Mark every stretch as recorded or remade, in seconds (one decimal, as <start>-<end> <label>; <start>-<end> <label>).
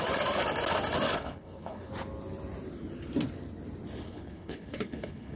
0.0-1.1 recorded; 1.1-1.9 remade; 1.9-4.0 recorded; 4.0-5.4 remade